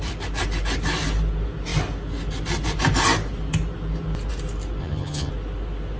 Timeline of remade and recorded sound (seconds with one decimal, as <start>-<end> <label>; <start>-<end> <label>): 0.0-4.8 recorded; 4.8-5.3 remade; 5.3-6.0 recorded